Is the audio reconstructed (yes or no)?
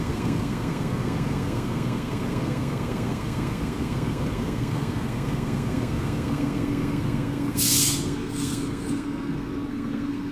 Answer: yes